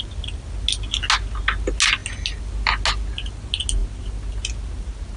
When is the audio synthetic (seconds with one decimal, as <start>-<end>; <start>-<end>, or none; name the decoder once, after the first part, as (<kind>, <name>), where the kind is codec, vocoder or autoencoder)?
none